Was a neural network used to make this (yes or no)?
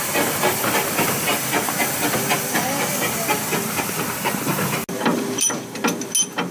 no